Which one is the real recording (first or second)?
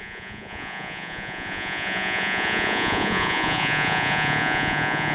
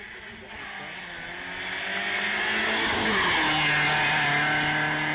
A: second